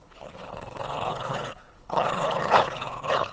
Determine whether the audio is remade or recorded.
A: remade